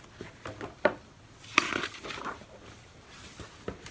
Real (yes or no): yes